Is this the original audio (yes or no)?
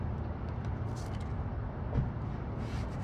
yes